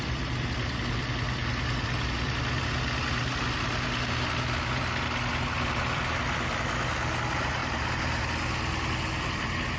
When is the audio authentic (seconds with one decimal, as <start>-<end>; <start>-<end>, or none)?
0.0-7.6; 8.2-9.8

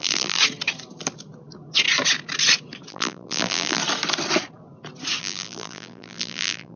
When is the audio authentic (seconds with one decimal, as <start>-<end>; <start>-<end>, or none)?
0.4-2.9; 3.8-5.2

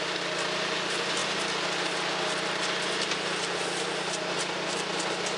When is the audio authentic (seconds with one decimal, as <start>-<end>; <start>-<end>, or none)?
0.0-5.4